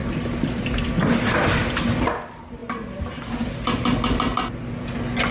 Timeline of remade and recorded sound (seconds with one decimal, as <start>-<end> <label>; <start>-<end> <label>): 0.0-1.6 recorded; 1.6-2.1 remade; 2.1-5.3 recorded